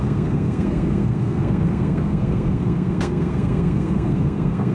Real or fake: fake